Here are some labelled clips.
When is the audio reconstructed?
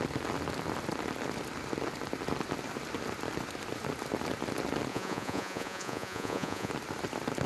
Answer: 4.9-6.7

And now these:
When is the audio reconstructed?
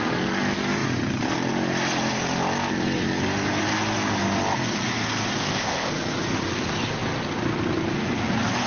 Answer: 5.4-5.9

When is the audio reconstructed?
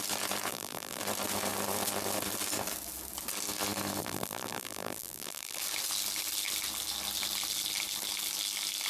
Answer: 0.5-1.0; 4.0-5.6